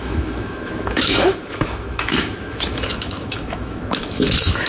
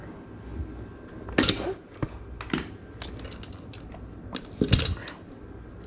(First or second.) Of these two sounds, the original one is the second